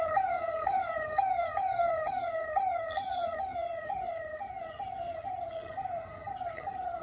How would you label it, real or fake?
fake